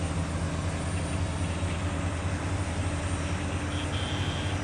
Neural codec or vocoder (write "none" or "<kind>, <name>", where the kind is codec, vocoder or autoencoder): none